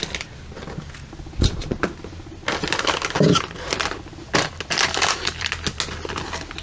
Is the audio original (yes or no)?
yes